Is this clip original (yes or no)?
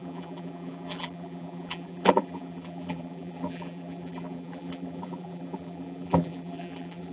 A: no